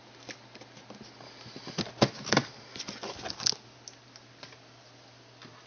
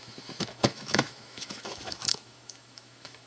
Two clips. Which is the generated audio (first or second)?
second